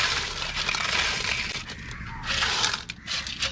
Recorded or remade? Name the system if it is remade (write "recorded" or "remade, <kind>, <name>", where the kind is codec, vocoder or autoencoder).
recorded